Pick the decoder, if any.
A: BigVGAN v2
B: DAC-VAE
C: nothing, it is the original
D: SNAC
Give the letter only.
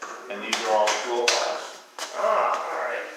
B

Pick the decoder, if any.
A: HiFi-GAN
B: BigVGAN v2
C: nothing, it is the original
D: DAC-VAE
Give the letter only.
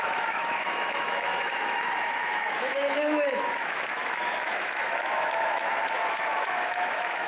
D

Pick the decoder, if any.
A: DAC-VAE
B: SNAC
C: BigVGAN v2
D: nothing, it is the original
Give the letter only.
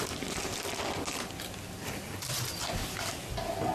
D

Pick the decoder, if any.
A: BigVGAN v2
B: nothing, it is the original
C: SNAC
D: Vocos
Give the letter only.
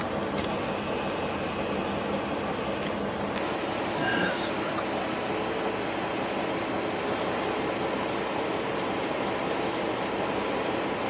B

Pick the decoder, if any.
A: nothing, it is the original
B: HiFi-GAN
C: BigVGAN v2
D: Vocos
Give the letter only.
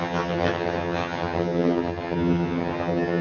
B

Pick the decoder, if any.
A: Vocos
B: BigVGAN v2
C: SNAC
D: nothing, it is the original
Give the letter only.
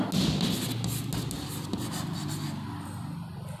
D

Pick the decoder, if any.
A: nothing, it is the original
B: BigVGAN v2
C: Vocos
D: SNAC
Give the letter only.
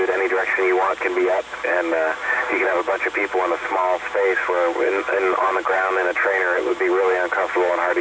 A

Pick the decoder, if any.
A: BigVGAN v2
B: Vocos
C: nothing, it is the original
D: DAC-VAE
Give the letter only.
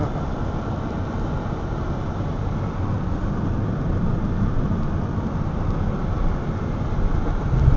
C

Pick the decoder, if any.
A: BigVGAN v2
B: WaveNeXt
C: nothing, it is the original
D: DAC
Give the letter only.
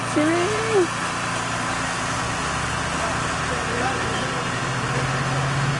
C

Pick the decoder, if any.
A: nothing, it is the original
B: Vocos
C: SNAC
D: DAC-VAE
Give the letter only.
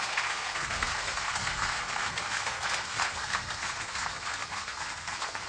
C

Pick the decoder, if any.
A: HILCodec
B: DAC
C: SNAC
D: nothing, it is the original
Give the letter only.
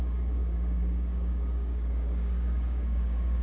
B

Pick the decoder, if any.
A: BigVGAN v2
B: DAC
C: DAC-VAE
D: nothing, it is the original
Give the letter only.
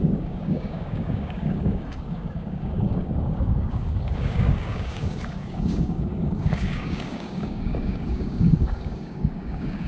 B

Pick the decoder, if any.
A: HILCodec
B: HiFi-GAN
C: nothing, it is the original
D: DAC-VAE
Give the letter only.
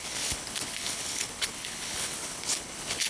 A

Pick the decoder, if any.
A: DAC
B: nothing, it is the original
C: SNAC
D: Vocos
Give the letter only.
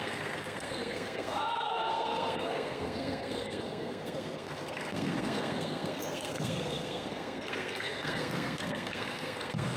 C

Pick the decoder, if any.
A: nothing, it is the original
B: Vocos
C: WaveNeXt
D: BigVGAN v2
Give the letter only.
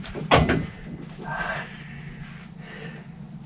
A